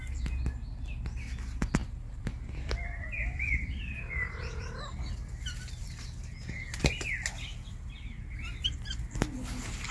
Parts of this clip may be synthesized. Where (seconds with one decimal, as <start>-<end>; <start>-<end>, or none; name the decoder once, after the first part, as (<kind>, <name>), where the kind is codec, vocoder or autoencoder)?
1.8-5.1 (vocoder, BigVGAN v2); 5.8-6.8; 7.5-8.2